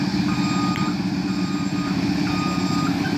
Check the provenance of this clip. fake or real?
real